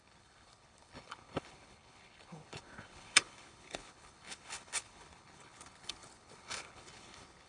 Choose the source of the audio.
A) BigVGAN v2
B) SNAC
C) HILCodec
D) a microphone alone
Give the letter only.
C